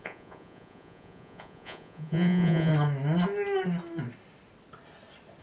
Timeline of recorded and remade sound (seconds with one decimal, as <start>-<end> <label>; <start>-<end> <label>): 0.0-2.7 remade; 2.7-5.4 recorded